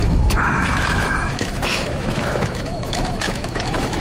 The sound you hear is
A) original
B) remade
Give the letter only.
B